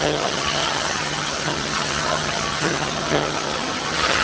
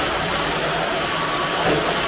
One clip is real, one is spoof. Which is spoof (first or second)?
first